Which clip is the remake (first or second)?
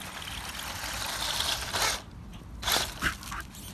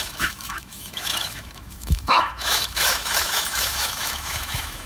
second